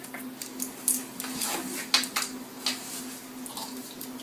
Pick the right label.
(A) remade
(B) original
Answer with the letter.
B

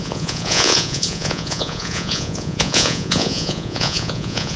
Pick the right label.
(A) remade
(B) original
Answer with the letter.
A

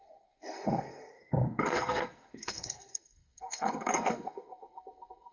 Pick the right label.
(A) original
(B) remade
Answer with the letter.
B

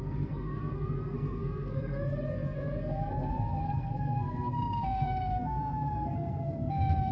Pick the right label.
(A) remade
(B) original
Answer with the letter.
A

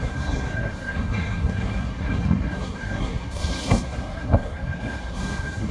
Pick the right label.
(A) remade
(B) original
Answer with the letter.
A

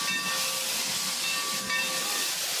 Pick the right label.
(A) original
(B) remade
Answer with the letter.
A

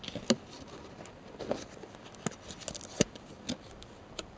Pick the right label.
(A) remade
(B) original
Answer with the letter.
B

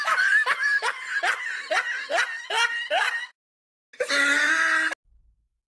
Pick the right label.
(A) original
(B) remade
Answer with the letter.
A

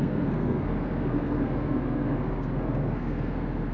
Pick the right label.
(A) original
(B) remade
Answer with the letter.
B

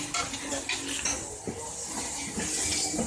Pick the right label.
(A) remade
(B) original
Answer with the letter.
B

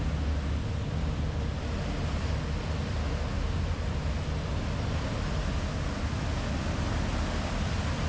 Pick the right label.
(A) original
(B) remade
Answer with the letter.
A